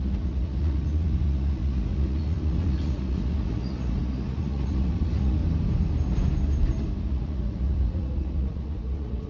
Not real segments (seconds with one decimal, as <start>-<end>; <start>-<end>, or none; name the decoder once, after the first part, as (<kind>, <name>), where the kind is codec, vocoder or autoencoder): 0.0-5.4 (vocoder, Vocos); 7.0-9.3